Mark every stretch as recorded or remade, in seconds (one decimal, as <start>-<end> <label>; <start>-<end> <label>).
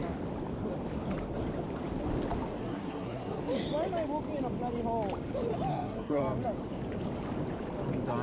0.0-2.6 recorded; 2.6-3.4 remade; 3.4-5.7 recorded; 5.7-6.2 remade; 6.2-8.2 recorded